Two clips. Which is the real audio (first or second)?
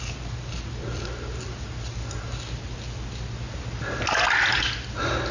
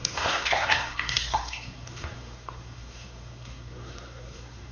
first